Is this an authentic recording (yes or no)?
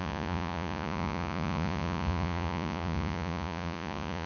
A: no